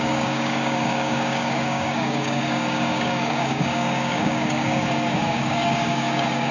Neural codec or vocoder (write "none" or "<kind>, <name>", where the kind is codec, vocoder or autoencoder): codec, DAC